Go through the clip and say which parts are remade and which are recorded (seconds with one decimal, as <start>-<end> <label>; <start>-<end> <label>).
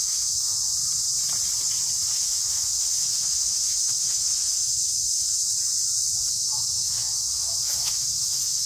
0.0-0.6 remade; 0.6-2.1 recorded; 2.1-5.5 remade; 5.5-6.2 recorded; 6.2-8.7 remade